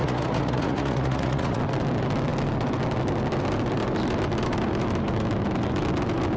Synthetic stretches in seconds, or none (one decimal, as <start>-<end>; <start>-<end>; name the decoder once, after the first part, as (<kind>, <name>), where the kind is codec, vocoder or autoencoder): 0.0-1.6 (vocoder, Vocos)